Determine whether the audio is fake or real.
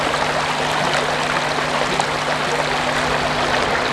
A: real